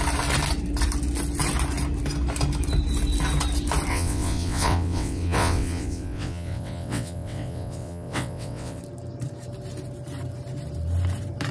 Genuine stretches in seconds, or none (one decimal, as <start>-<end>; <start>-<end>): 0.0-3.9; 8.8-11.5